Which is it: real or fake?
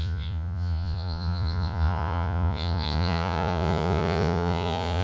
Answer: fake